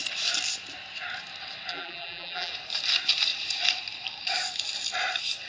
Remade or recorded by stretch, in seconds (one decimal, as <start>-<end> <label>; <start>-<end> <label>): 0.0-1.7 recorded; 1.7-2.5 remade; 2.5-5.5 recorded